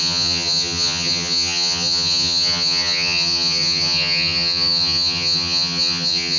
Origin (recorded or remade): remade